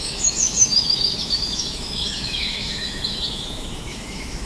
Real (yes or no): no